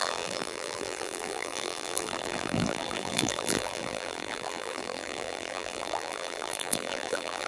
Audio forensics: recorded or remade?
remade